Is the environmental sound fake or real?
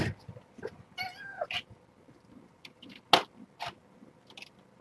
real